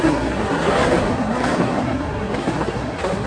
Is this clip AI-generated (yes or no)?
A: yes